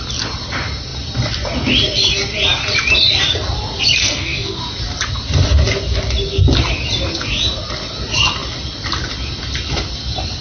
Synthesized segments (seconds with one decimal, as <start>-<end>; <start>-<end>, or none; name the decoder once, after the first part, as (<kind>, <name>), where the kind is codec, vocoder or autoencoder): 4.0-4.6 (codec, SNAC)